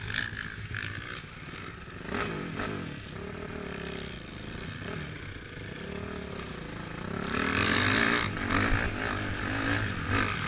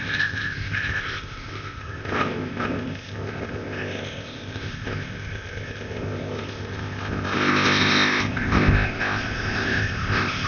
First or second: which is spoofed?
second